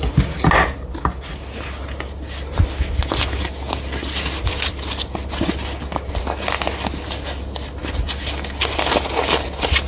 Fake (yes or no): no